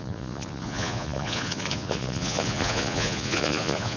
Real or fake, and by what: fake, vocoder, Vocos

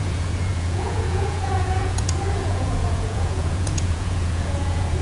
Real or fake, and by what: fake, vocoder, Vocos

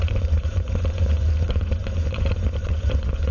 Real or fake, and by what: fake, vocoder, Vocos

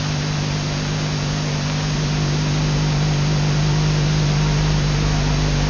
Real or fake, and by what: real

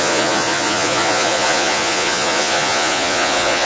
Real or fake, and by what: fake, vocoder, Vocos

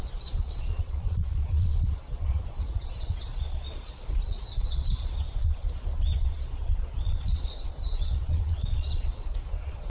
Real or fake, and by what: fake, vocoder, Vocos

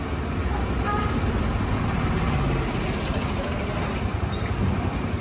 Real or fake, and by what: real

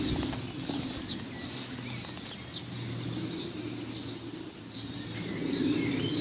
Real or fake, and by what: real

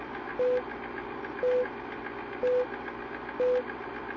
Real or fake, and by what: real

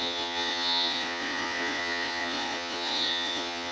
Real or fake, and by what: fake, vocoder, Vocos